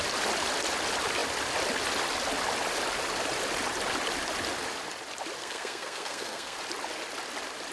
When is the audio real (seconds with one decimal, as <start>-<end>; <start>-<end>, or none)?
0.0-5.4; 6.6-7.7